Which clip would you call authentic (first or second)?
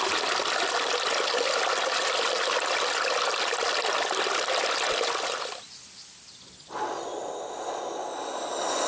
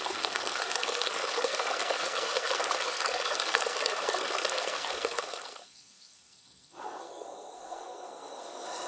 first